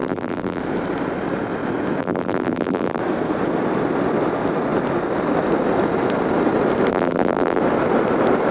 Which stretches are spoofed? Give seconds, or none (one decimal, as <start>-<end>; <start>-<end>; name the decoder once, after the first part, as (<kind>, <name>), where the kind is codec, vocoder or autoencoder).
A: 0.0-0.6 (vocoder, BigVGAN v2); 2.0-3.0; 6.9-7.6